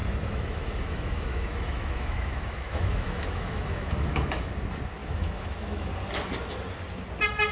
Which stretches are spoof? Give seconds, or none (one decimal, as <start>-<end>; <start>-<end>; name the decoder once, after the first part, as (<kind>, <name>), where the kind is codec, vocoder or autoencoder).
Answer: 0.0-4.5 (autoencoder, DAC-VAE); 5.0-5.9